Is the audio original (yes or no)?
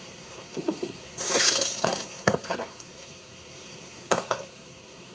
no